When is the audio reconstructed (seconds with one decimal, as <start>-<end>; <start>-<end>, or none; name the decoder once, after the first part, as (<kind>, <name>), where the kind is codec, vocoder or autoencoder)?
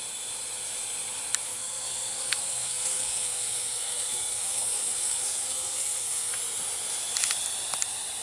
1.4-6.3 (codec, SNAC)